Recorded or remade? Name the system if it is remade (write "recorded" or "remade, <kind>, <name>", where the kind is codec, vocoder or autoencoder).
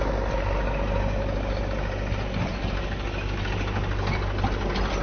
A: recorded